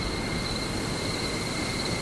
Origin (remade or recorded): recorded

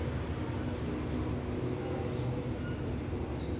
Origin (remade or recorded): recorded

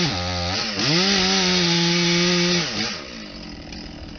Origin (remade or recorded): recorded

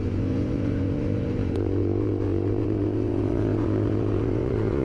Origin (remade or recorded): remade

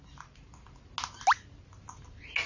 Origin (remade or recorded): recorded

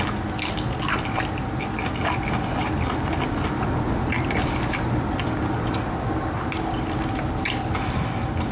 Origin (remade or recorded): recorded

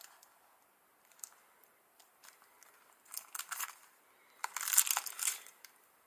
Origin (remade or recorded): recorded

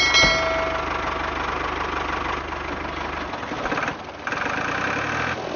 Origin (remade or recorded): recorded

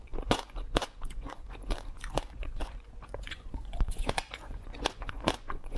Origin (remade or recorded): remade